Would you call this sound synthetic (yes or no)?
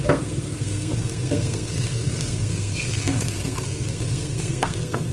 yes